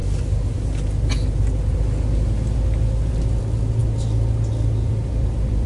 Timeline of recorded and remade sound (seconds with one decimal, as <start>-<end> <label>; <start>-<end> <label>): 0.0-3.4 recorded; 3.4-3.8 remade; 3.8-4.5 recorded; 4.5-5.7 remade